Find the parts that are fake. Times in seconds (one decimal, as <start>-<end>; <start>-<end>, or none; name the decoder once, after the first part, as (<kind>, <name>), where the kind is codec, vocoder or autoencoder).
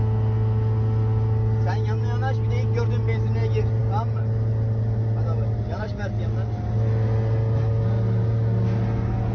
none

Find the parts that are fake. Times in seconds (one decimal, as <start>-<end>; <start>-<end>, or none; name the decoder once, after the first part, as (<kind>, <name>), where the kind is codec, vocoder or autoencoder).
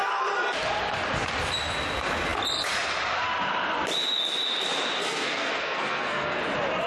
5.0-6.4 (codec, SNAC)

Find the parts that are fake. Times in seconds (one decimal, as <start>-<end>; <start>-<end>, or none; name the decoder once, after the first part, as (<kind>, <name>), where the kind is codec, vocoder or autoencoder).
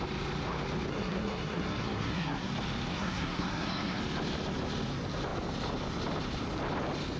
0.9-2.5 (codec, SNAC); 2.9-4.0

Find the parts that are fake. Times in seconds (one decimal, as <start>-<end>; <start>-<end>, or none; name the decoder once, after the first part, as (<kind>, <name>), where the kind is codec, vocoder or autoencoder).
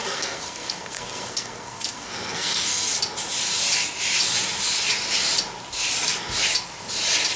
0.0-2.9 (codec, SNAC)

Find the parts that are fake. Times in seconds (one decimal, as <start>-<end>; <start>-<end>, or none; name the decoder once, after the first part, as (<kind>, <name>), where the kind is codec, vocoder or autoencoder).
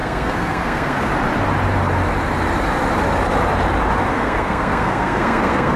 0.0-1.1 (codec, SNAC); 4.1-5.8